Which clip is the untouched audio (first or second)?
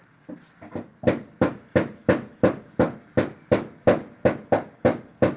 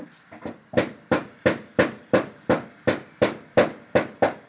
first